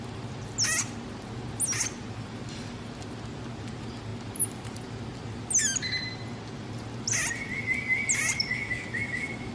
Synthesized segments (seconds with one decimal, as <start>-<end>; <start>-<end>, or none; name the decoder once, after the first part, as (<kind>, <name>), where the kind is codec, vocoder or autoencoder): 8.5-9.5 (autoencoder, DAC-VAE)